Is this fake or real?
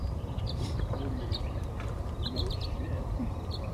fake